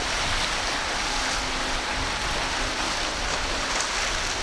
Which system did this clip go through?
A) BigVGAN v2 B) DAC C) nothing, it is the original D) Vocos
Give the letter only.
C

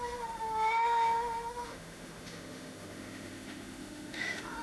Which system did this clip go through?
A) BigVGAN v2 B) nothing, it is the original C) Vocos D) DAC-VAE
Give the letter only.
D